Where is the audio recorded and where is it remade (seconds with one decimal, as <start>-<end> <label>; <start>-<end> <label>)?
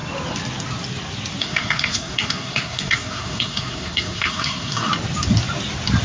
0.0-1.4 recorded; 1.4-4.9 remade; 4.9-6.0 recorded